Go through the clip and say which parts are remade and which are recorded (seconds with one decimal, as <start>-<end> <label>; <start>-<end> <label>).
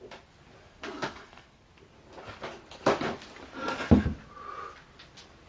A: 0.0-0.6 recorded; 0.6-1.6 remade; 1.6-5.5 recorded